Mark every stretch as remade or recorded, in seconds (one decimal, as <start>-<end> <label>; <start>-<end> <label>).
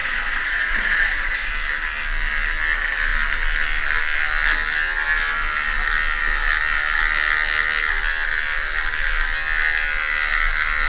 0.0-1.5 remade; 1.5-10.9 recorded